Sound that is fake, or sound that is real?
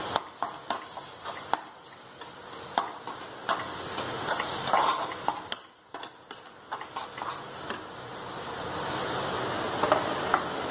real